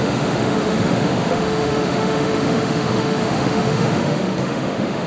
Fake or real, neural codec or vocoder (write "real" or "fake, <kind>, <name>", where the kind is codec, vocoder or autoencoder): fake, autoencoder, DAC-VAE